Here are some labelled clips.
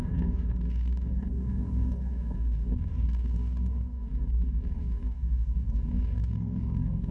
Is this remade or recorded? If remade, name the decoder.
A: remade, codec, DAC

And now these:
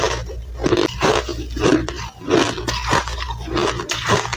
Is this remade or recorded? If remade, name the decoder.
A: recorded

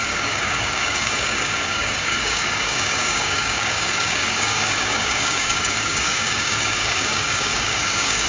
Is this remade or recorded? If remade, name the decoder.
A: remade, codec, DAC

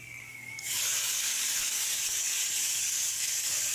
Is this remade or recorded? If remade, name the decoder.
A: remade, codec, DAC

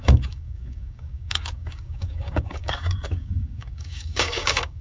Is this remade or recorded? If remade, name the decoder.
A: remade, codec, DAC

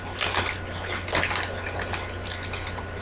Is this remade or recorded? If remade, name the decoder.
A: recorded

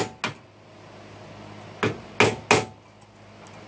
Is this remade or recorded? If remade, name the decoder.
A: recorded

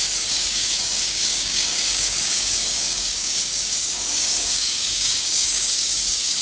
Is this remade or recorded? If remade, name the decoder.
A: remade, codec, DAC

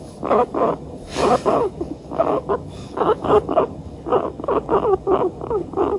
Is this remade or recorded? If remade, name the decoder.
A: remade, codec, DAC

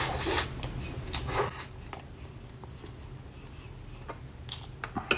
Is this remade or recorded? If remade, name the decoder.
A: recorded